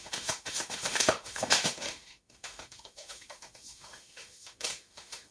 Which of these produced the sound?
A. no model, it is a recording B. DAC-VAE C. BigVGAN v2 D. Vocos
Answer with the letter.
B